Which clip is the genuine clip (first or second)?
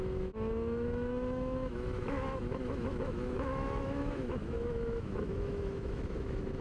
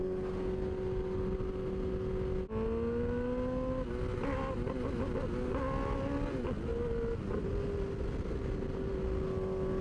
second